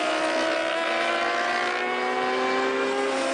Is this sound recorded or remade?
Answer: recorded